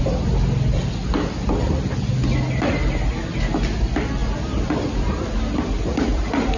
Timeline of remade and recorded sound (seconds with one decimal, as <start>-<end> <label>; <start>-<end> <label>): 0.0-6.6 recorded